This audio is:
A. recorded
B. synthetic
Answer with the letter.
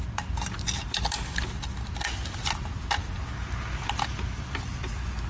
A